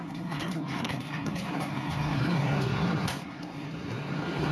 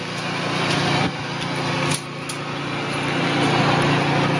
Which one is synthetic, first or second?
first